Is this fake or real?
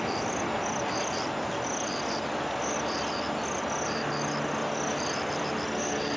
real